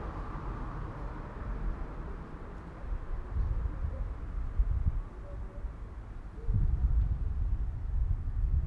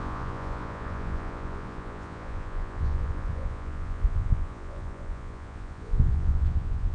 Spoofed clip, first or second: second